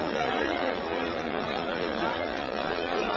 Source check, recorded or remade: remade